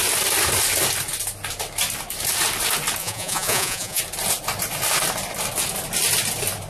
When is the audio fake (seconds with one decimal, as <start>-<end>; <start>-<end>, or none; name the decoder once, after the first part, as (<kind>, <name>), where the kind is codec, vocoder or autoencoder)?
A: 3.0-4.0 (vocoder, Vocos)